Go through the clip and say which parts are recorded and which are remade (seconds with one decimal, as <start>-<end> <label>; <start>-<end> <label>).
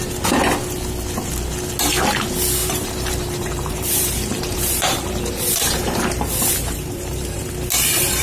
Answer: 0.0-2.6 recorded; 2.6-7.5 remade; 7.5-8.2 recorded